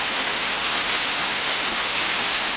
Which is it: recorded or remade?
remade